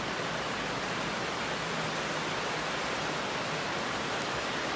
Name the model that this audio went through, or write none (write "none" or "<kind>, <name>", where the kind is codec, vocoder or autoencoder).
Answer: none